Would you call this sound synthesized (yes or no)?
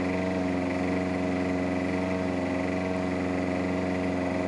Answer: no